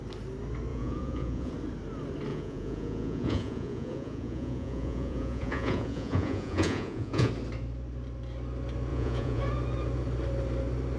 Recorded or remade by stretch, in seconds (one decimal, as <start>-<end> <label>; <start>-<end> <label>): 0.0-0.7 recorded; 0.7-1.5 remade; 1.5-2.3 recorded; 2.3-7.3 remade; 7.3-8.9 recorded; 8.9-9.4 remade; 9.4-11.0 recorded